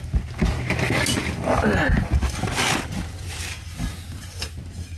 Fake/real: real